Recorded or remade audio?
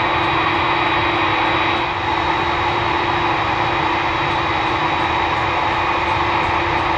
recorded